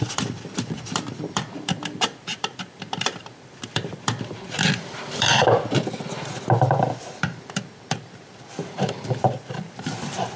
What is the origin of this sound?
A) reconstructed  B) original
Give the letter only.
A